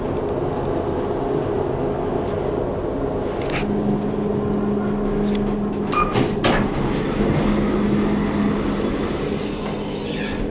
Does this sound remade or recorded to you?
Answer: recorded